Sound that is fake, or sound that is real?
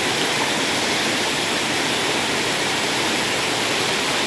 real